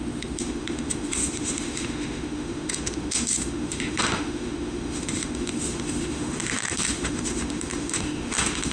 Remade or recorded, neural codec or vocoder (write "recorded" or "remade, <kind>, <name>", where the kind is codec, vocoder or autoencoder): remade, autoencoder, DAC-VAE